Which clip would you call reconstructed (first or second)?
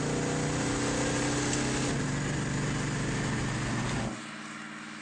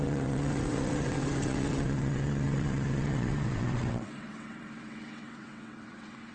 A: second